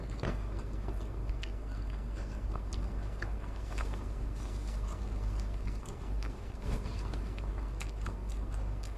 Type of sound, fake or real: fake